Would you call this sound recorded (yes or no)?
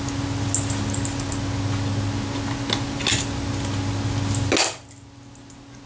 yes